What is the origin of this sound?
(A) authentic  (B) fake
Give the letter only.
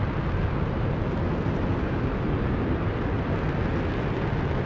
A